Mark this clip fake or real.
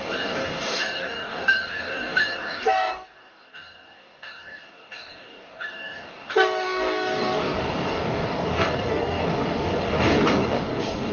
fake